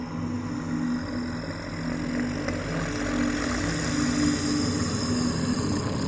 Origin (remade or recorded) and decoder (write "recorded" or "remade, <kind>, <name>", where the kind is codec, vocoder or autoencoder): recorded